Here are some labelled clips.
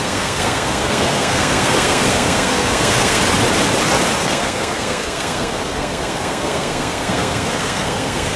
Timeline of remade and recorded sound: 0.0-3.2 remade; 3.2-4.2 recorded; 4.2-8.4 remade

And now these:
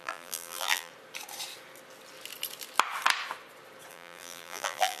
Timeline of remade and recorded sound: 0.0-0.9 remade; 0.9-3.9 recorded; 3.9-5.0 remade

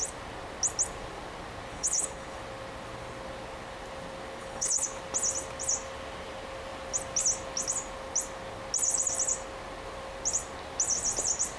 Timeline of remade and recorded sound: 0.0-1.7 recorded; 1.7-2.4 remade; 2.4-4.4 recorded; 4.4-5.0 remade; 5.0-11.6 recorded

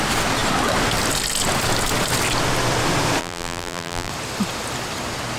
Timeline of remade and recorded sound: 0.0-3.2 recorded; 3.2-4.1 remade; 4.1-5.4 recorded

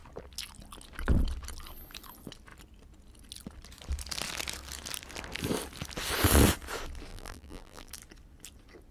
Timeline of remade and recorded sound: 0.0-7.1 recorded; 7.1-7.9 remade; 7.9-8.9 recorded

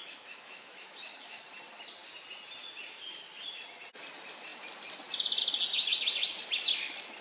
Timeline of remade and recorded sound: 0.0-1.4 remade; 1.4-7.2 recorded

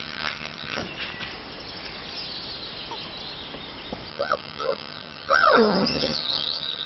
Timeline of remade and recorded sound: 0.0-0.8 remade; 0.8-4.1 recorded; 4.1-6.9 remade